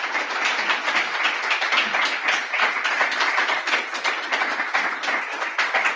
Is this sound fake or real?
real